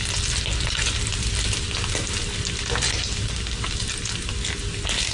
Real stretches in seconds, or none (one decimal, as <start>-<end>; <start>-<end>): 0.0-5.1